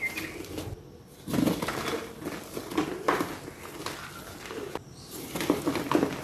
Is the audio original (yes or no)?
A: yes